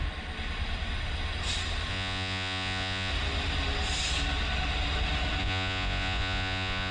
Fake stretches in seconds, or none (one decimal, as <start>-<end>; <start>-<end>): 1.9-3.1; 5.4-6.9